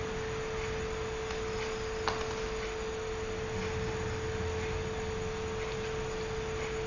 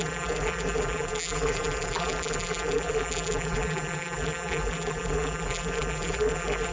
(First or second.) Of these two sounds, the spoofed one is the second